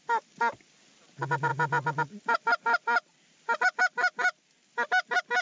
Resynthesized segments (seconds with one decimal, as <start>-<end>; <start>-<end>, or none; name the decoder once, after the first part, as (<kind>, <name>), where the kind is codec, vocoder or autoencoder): none